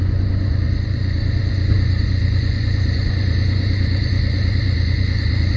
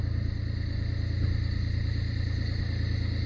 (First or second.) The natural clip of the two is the second